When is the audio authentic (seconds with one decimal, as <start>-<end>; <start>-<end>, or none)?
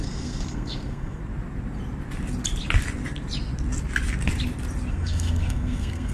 1.2-4.9